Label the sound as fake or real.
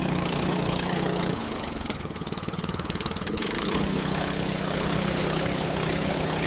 fake